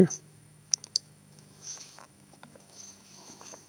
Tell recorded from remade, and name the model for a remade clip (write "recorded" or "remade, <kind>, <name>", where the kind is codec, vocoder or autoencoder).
remade, autoencoder, DAC-VAE